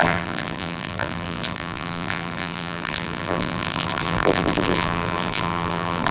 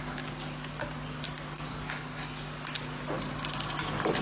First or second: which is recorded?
second